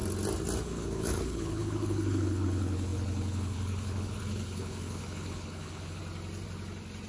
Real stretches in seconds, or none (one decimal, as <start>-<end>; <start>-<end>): 0.0-0.6; 6.0-7.1